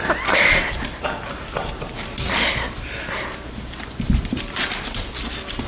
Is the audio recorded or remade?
recorded